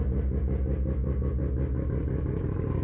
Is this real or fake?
real